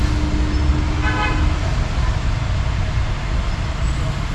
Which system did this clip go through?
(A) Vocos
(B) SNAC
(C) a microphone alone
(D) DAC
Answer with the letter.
C